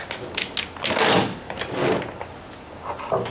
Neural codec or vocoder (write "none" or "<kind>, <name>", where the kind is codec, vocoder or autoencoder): none